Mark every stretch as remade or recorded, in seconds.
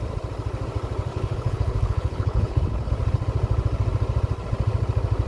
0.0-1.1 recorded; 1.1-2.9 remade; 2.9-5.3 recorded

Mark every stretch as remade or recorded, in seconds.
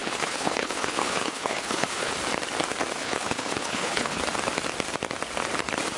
0.0-2.1 remade; 2.1-3.0 recorded; 3.0-4.2 remade; 4.2-6.0 recorded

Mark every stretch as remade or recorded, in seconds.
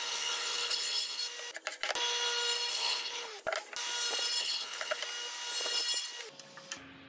0.0-1.2 remade; 1.2-2.7 recorded; 2.7-3.3 remade; 3.3-4.4 recorded; 4.4-5.0 remade; 5.0-7.1 recorded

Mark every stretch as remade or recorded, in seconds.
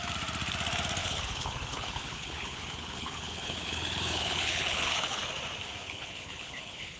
0.0-1.0 recorded; 1.0-5.2 remade; 5.2-5.8 recorded; 5.8-7.0 remade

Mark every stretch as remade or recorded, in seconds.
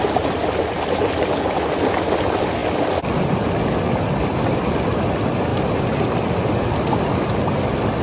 0.0-8.0 recorded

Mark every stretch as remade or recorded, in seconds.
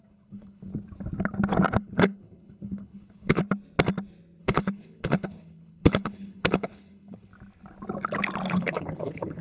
0.0-0.7 remade; 0.7-1.8 recorded; 1.8-3.4 remade; 3.4-4.4 recorded; 4.4-7.3 remade; 7.3-8.5 recorded; 8.5-9.4 remade